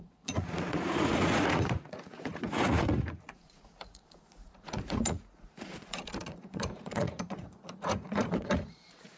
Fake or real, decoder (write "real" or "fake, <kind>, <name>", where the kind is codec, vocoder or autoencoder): fake, vocoder, Vocos